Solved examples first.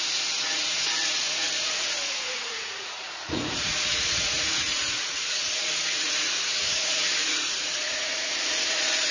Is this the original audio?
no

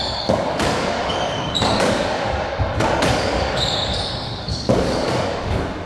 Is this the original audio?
no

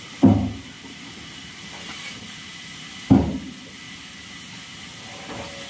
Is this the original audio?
yes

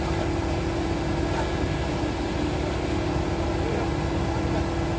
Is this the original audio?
yes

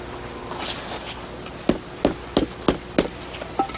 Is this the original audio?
yes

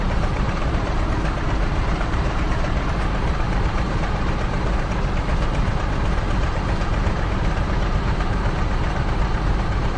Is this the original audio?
no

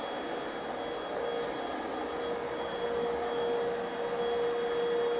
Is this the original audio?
yes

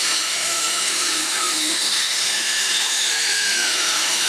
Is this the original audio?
no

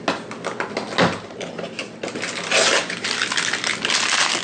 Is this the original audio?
yes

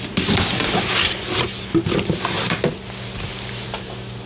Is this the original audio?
yes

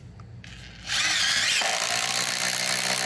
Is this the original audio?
yes